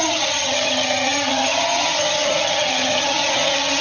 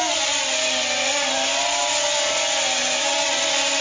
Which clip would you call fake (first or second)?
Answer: first